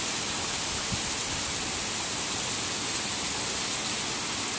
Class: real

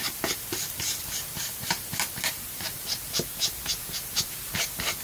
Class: fake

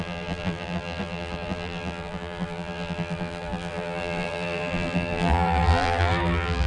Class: fake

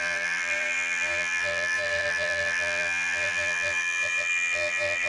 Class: fake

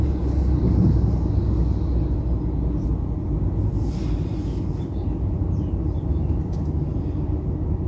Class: real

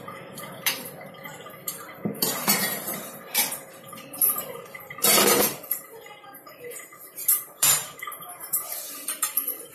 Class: fake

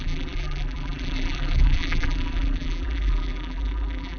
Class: fake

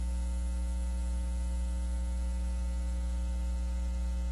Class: real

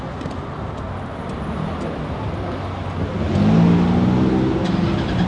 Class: real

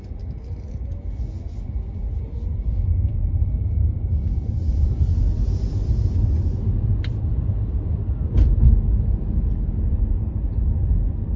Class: real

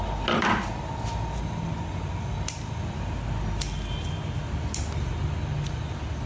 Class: real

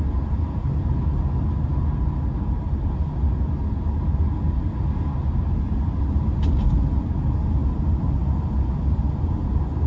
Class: real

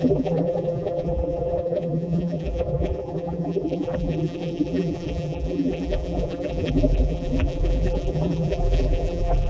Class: fake